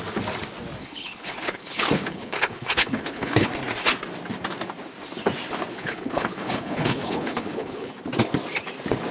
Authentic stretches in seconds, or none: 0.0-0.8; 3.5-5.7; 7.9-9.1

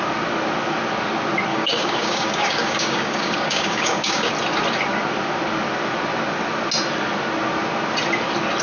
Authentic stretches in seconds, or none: 0.0-1.5; 4.3-8.6

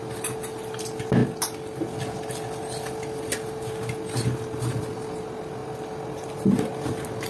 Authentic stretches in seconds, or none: 0.0-7.3

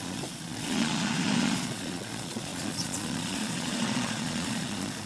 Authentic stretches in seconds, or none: none

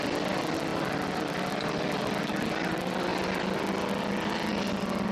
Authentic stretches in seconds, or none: 0.0-5.1

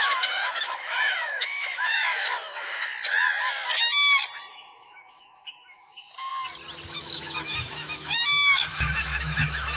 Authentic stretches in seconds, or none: 2.9-4.5; 6.3-6.9

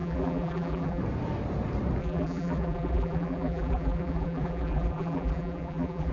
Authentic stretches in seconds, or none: 1.0-2.0